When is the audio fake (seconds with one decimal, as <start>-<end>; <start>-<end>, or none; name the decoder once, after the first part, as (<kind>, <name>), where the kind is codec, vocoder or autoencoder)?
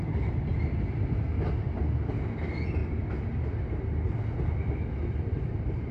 2.8-3.6 (vocoder, BigVGAN v2)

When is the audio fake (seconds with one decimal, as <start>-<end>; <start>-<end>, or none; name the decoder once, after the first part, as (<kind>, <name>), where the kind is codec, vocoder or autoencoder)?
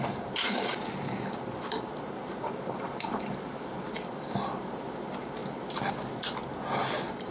0.0-5.4 (vocoder, BigVGAN v2)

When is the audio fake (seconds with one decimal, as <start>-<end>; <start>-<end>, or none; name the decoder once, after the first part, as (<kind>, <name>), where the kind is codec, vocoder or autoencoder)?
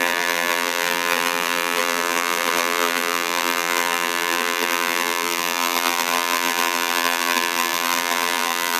0.0-8.8 (vocoder, BigVGAN v2)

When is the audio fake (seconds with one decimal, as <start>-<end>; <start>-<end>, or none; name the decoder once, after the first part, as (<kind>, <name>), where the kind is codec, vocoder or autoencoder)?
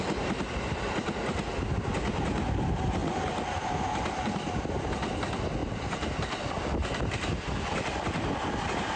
3.0-4.9 (vocoder, BigVGAN v2)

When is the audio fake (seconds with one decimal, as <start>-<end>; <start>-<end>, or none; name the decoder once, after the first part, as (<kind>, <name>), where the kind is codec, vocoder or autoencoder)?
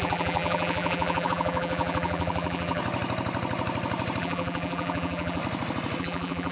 0.0-2.8 (vocoder, BigVGAN v2); 4.2-5.4; 6.0-6.5